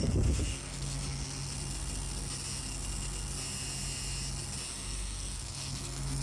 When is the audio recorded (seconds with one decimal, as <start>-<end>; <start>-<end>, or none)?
1.0-4.7

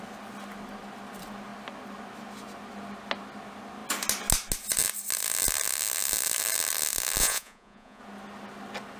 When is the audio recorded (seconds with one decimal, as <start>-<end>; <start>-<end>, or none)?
0.0-7.2; 8.0-9.0